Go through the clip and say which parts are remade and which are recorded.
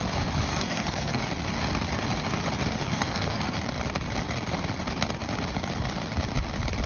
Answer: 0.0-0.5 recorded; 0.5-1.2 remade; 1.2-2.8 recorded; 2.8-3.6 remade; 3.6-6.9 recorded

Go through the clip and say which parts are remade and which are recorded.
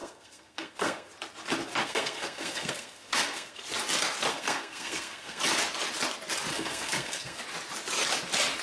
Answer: 0.0-1.1 remade; 1.1-1.8 recorded; 1.8-3.6 remade; 3.6-4.3 recorded; 4.3-5.4 remade; 5.4-6.5 recorded; 6.5-7.4 remade; 7.4-8.6 recorded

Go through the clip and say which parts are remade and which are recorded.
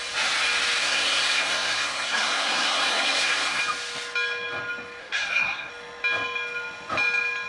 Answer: 0.0-0.8 recorded; 0.8-3.6 remade; 3.6-5.0 recorded; 5.0-5.7 remade; 5.7-7.5 recorded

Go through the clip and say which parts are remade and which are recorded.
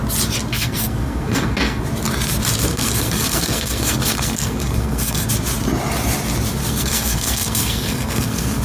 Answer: 0.0-0.5 recorded; 0.5-1.8 remade; 1.8-2.7 recorded; 2.7-5.3 remade; 5.3-6.6 recorded; 6.6-8.6 remade